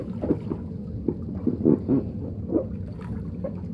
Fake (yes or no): no